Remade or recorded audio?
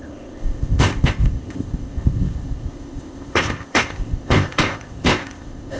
remade